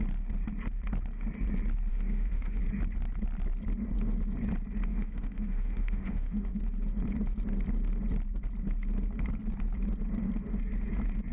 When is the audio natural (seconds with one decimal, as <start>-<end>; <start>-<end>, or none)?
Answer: 0.0-1.9; 2.6-4.9; 6.6-11.3